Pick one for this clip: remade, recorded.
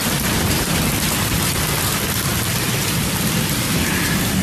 recorded